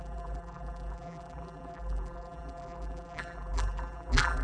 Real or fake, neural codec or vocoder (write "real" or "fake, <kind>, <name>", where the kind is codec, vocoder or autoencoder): fake, vocoder, BigVGAN v2